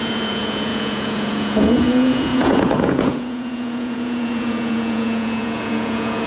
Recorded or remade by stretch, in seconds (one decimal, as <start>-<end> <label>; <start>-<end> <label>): 0.0-6.3 remade